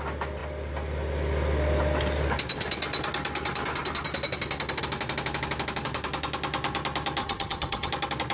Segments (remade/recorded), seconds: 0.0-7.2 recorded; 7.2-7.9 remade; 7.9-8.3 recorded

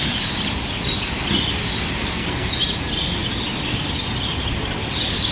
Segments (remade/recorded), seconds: 0.0-2.0 recorded; 2.0-2.5 remade; 2.5-5.3 recorded

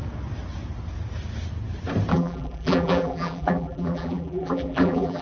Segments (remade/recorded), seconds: 0.0-2.1 recorded; 2.1-5.2 remade

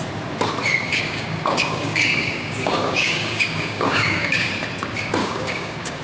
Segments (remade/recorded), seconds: 0.0-0.9 recorded; 0.9-4.5 remade; 4.5-5.2 recorded; 5.2-6.0 remade

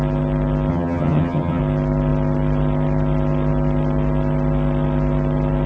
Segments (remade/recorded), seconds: 0.0-0.7 recorded; 0.7-1.6 remade; 1.6-5.7 recorded

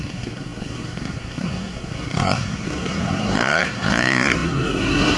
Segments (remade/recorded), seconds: 0.0-5.2 remade

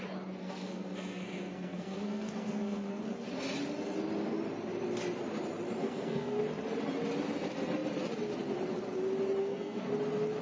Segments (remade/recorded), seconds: 0.0-0.4 recorded; 0.4-3.0 remade; 3.0-5.8 recorded; 5.8-6.4 remade; 6.4-9.4 recorded; 9.4-9.9 remade; 9.9-10.4 recorded

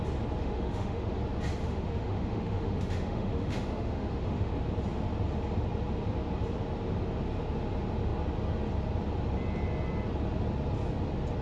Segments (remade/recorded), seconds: 0.0-0.4 recorded; 0.4-1.1 remade; 1.1-1.6 recorded; 1.6-4.5 remade; 4.5-11.4 recorded